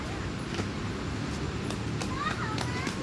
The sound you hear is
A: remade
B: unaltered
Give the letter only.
B